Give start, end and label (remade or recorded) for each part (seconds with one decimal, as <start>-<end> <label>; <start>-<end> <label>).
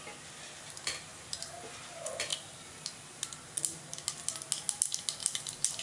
0.0-1.1 recorded; 1.1-1.6 remade; 1.6-2.3 recorded; 2.3-3.2 remade; 3.2-5.2 recorded; 5.2-5.8 remade